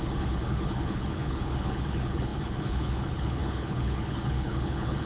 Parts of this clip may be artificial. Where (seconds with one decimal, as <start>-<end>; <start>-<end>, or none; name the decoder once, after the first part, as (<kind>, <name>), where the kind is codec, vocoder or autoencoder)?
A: 0.0-5.1 (codec, HILCodec)